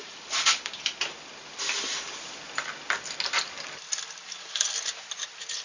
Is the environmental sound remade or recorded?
recorded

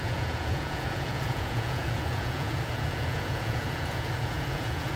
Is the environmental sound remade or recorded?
remade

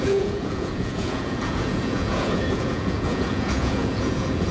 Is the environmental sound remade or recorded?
remade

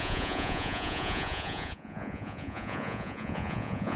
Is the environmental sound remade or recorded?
remade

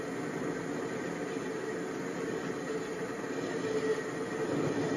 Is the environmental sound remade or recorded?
recorded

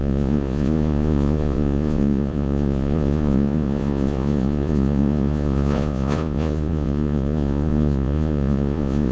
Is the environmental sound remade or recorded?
remade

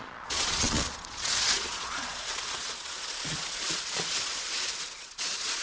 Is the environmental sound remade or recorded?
remade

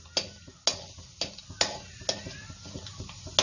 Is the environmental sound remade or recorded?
recorded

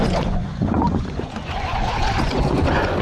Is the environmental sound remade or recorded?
remade